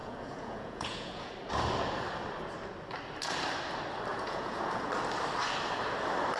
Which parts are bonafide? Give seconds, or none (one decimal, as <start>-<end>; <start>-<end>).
1.3-4.1; 4.9-6.4